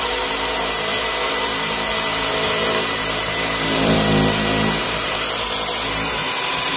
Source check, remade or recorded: remade